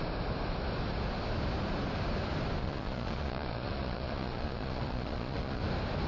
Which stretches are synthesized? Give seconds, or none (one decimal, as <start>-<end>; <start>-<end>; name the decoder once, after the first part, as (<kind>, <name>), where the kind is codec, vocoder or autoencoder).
2.6-5.6 (vocoder, Vocos)